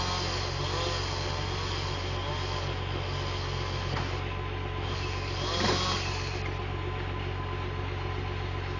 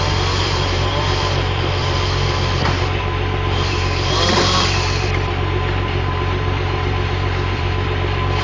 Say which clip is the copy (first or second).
second